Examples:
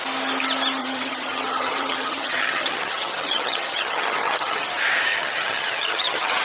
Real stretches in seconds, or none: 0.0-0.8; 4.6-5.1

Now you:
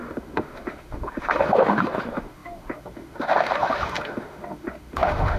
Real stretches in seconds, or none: none